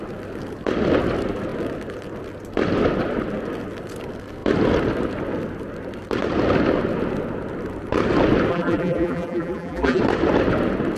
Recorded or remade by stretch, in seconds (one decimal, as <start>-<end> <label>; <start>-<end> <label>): 0.0-8.5 recorded; 8.5-10.0 remade; 10.0-11.0 recorded